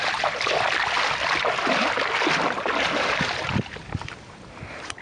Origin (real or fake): real